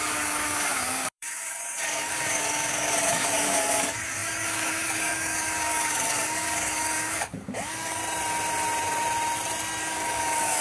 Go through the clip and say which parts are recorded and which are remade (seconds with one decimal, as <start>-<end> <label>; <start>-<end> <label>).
0.0-8.0 remade; 8.0-9.8 recorded; 9.8-10.6 remade